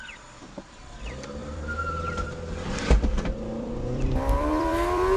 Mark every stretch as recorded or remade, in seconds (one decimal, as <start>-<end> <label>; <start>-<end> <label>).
0.0-5.2 remade